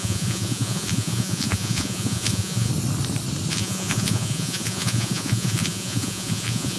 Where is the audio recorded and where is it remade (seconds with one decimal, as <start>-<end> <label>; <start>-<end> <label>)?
0.0-2.7 remade; 2.7-3.5 recorded; 3.5-6.8 remade